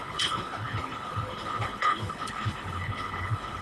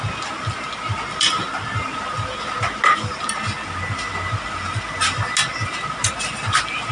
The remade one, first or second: first